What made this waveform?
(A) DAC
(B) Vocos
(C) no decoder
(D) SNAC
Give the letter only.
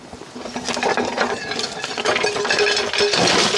C